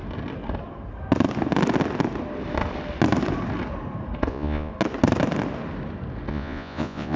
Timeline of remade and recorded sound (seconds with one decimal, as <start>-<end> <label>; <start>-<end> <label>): 0.0-4.3 recorded; 4.3-4.7 remade; 4.7-6.3 recorded; 6.3-7.2 remade